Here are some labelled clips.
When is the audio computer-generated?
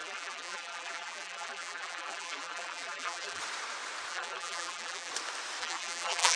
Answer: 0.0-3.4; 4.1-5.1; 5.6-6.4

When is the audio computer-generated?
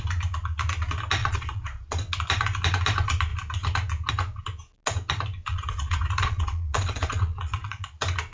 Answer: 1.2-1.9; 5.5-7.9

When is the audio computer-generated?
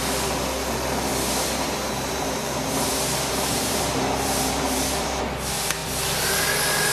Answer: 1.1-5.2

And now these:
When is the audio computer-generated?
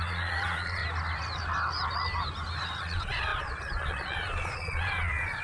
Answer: 0.0-0.8; 2.8-5.4